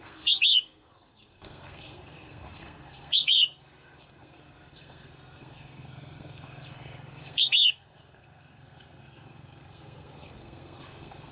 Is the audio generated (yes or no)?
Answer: yes